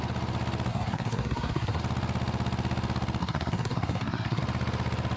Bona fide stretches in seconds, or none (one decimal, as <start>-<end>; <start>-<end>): 0.0-0.7; 1.8-3.2; 4.4-5.2